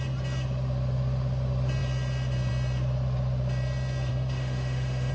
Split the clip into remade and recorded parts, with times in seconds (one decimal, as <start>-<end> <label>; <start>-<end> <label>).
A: 0.0-4.1 recorded; 4.1-5.1 remade